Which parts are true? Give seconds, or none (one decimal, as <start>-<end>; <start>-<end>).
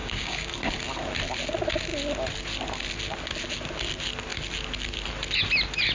0.5-5.9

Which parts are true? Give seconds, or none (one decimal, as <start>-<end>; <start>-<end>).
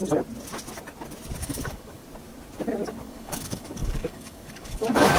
0.0-1.4; 2.0-3.0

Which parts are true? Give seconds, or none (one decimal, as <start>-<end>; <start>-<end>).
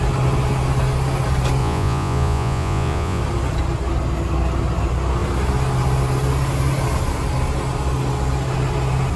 0.0-1.6; 3.2-9.2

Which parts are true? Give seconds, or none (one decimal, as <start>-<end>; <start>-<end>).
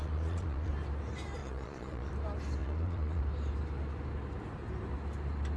0.7-1.4; 2.1-2.6; 3.2-5.6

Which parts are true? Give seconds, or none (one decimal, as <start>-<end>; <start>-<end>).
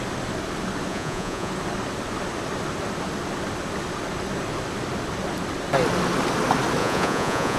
0.0-0.9; 1.5-6.8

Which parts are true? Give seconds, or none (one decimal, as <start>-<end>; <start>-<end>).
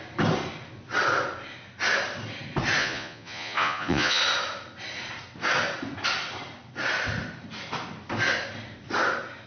0.0-2.8; 4.2-9.5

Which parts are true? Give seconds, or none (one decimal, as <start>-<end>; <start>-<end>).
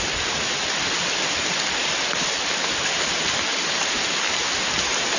0.0-5.2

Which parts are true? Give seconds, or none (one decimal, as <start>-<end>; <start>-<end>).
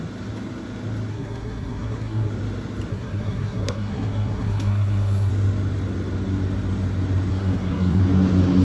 0.0-1.1; 2.3-2.9; 5.3-7.3; 8.0-8.6